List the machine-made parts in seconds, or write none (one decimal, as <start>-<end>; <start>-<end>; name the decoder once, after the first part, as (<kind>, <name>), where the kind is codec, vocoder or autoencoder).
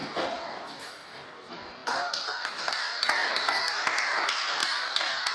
0.0-5.3 (codec, DAC)